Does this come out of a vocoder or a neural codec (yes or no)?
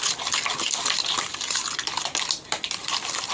no